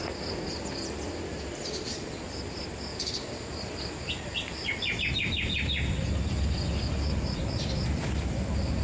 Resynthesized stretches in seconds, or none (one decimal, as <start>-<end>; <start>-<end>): none